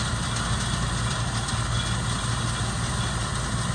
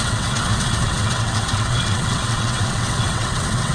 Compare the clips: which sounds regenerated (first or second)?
second